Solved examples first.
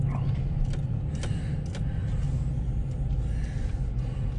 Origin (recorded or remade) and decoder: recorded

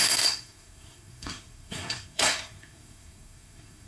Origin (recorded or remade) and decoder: remade, codec, SNAC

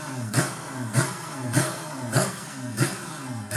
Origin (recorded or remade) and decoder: remade, codec, SNAC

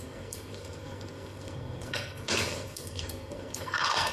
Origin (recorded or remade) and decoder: remade, codec, SNAC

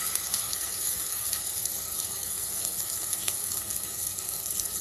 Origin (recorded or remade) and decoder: remade, codec, SNAC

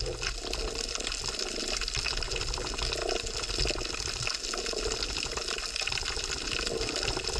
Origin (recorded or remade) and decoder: recorded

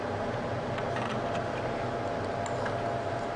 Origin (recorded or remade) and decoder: recorded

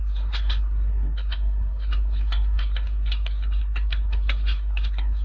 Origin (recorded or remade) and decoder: remade, codec, SNAC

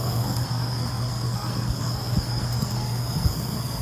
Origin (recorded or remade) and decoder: remade, codec, SNAC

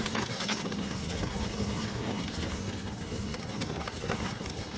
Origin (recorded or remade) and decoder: remade, codec, SNAC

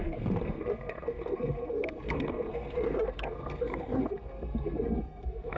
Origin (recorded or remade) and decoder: remade, codec, SNAC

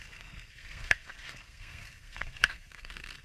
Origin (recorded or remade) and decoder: remade, codec, SNAC